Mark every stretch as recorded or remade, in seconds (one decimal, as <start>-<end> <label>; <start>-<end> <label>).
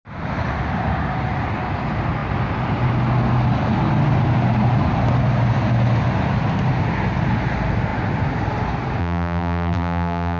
0.0-9.0 recorded; 9.0-10.4 remade